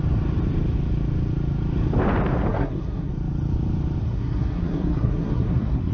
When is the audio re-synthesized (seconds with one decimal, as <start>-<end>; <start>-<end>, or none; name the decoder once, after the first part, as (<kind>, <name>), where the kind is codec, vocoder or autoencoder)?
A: 2.5-3.1 (codec, SNAC); 4.0-5.9